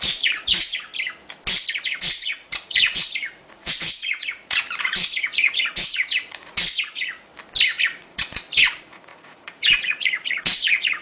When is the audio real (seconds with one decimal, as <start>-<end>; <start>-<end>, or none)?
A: 0.9-1.8; 7.3-7.8